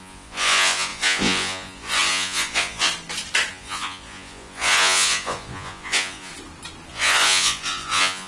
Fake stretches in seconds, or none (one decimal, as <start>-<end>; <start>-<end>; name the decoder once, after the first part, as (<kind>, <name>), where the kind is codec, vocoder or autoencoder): 0.0-2.9 (vocoder, Vocos); 3.5-6.3; 6.9-8.3